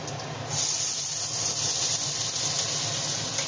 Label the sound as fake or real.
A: real